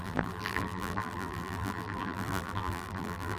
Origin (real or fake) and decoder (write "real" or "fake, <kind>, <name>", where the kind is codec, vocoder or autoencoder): fake, vocoder, BigVGAN v2